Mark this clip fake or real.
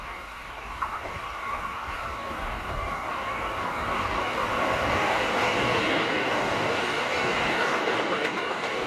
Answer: fake